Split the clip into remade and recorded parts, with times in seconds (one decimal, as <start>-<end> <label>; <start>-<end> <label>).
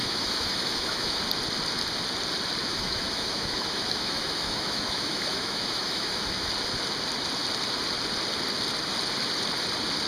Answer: 0.0-1.2 remade; 1.2-2.6 recorded; 2.6-6.5 remade; 6.5-10.1 recorded